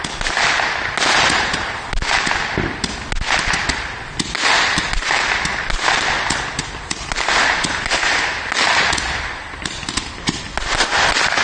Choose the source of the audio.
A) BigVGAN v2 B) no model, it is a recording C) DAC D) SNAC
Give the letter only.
B